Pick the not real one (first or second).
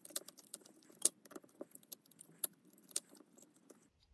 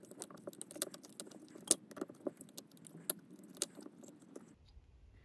first